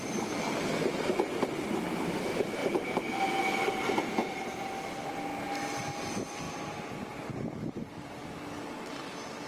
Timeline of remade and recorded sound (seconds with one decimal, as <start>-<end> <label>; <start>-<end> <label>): 0.0-2.6 recorded; 2.6-3.2 remade; 3.2-9.5 recorded